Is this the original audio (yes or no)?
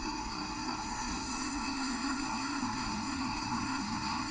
no